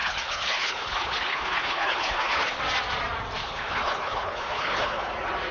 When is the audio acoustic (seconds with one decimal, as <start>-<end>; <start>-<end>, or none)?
2.6-3.4; 5.1-5.5